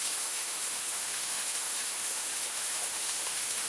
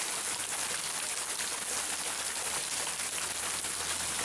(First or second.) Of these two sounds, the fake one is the first